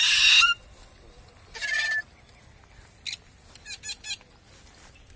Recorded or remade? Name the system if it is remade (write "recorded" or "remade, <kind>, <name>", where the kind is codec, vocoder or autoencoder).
recorded